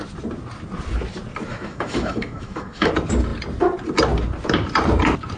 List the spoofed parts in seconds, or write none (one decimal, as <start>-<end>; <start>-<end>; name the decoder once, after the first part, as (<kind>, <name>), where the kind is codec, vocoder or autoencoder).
1.5-2.9 (autoencoder, DAC-VAE)